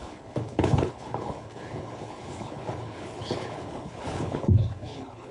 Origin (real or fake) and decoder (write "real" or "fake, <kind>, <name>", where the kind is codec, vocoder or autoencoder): fake, codec, HILCodec